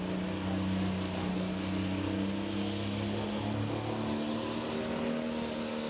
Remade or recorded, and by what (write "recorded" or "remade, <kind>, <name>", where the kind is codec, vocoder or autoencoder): recorded